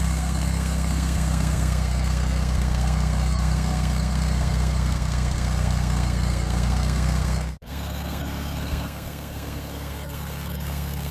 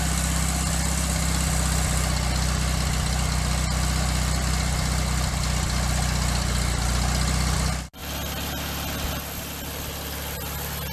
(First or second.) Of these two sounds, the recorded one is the second